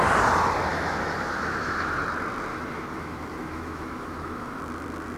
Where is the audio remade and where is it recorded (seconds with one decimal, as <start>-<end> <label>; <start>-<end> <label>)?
0.0-0.7 recorded; 0.7-2.0 remade; 2.0-2.5 recorded; 2.5-4.6 remade; 4.6-5.2 recorded